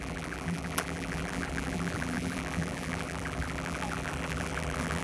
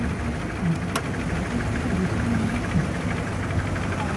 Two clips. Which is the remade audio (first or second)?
first